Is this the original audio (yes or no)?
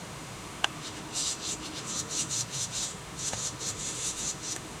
no